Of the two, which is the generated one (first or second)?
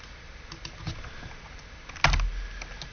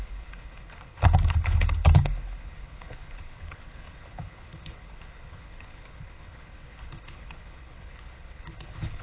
second